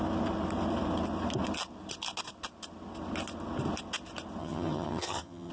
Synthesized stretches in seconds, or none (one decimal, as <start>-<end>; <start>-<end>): 4.4-5.5